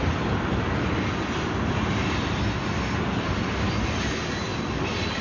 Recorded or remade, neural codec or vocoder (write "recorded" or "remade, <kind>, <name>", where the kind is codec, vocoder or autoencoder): recorded